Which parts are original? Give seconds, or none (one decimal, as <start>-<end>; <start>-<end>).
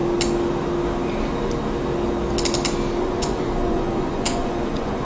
0.0-3.0